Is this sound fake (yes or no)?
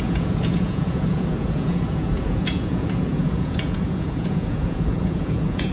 yes